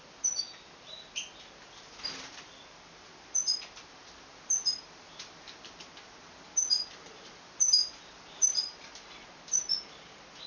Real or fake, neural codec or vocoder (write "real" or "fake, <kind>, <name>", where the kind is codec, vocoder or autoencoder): real